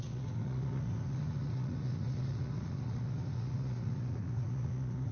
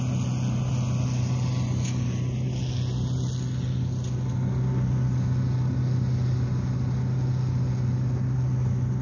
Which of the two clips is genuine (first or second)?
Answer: second